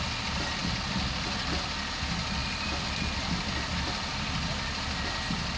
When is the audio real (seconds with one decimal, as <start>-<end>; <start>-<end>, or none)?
0.0-5.6